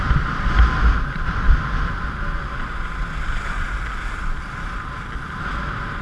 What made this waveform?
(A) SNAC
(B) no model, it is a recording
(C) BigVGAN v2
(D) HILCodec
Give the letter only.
B